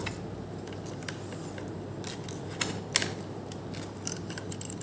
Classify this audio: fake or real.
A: real